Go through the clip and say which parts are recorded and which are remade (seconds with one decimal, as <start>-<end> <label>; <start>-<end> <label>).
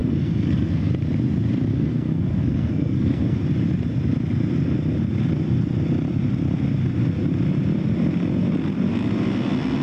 0.0-0.9 remade; 0.9-1.7 recorded; 1.7-3.4 remade; 3.4-9.8 recorded